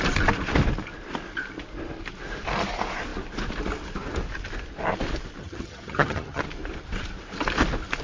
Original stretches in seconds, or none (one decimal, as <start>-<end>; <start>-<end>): 0.0-5.4; 6.4-8.0

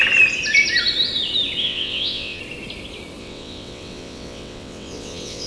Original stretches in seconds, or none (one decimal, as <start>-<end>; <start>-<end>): 0.0-1.6; 2.4-3.2